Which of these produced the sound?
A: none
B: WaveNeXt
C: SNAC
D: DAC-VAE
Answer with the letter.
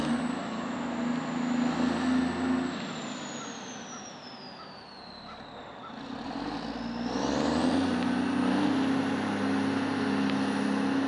A